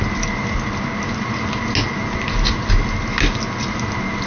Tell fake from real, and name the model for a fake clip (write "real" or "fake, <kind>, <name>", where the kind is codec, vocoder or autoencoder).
real